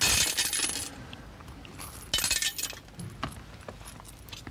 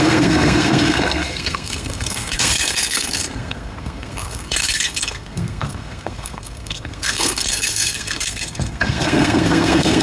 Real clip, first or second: first